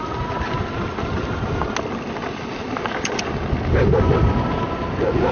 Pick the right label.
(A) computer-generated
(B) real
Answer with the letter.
B